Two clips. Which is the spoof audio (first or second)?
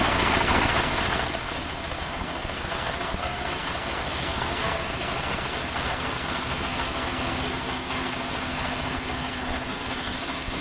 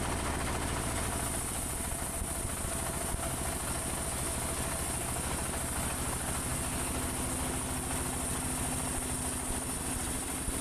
first